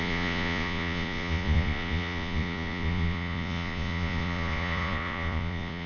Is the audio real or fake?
fake